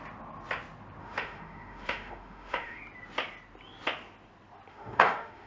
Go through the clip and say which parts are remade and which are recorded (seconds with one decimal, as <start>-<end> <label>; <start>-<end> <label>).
0.0-1.0 recorded; 1.0-2.8 remade; 2.8-4.7 recorded; 4.7-5.5 remade